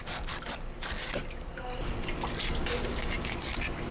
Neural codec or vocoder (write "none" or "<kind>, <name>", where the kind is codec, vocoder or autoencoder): none